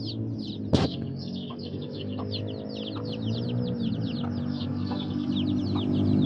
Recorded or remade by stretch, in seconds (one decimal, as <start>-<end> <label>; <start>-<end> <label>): 0.0-0.8 recorded; 0.8-2.2 remade; 2.2-4.5 recorded; 4.5-5.3 remade; 5.3-6.3 recorded